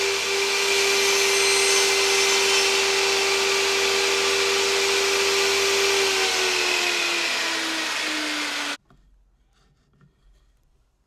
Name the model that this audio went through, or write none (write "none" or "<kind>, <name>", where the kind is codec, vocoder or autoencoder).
none